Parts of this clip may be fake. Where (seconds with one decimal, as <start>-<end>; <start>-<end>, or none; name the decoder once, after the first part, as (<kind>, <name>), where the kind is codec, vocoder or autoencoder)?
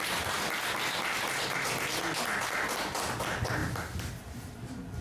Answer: none